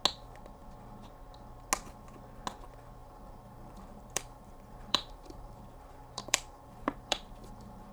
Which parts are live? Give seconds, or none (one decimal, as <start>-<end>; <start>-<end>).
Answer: 0.0-3.0